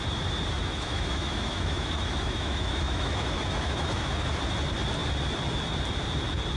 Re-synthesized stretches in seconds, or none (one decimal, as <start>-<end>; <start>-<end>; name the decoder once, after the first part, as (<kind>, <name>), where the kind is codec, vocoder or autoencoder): 0.6-4.3 (autoencoder, DAC-VAE)